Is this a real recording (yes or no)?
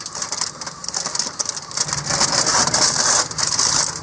yes